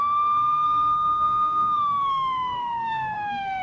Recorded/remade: remade